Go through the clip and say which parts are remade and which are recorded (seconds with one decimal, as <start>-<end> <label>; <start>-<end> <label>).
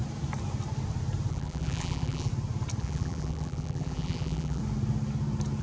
0.0-1.3 recorded; 1.3-2.3 remade; 2.3-2.8 recorded; 2.8-4.6 remade; 4.6-5.6 recorded